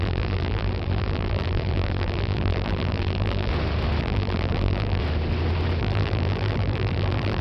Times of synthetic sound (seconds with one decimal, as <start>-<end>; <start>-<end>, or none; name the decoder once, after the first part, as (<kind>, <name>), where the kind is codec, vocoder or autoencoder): 0.0-3.5 (vocoder, BigVGAN v2); 4.0-5.0; 5.8-7.4